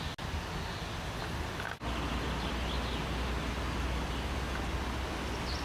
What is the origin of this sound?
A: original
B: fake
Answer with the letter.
A